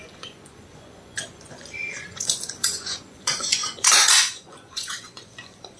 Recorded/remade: remade